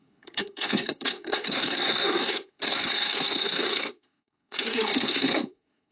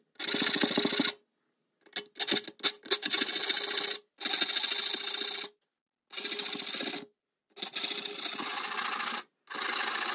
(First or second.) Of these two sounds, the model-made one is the first